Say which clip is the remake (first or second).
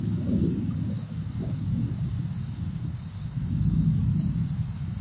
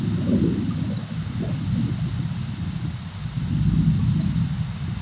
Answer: first